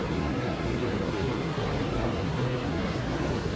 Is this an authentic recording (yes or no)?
no